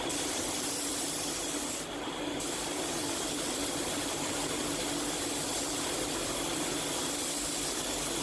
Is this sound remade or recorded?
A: recorded